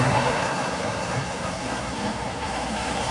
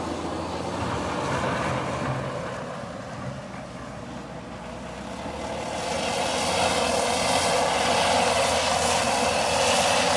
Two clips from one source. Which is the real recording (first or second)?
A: second